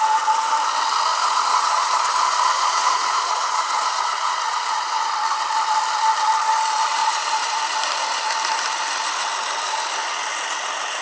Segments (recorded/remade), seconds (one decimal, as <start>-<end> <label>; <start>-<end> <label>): 0.0-1.1 recorded; 1.1-5.1 remade; 5.1-7.0 recorded; 7.0-7.6 remade; 7.6-11.0 recorded